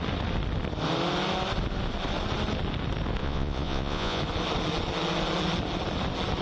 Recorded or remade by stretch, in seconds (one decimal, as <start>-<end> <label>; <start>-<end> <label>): 0.0-3.2 recorded; 3.2-4.2 remade; 4.2-6.4 recorded